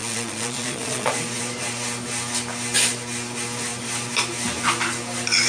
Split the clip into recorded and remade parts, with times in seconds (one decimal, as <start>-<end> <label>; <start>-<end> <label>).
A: 0.0-1.1 remade; 1.1-5.5 recorded